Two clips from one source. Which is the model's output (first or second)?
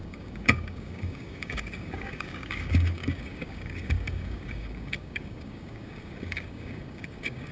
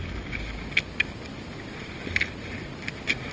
first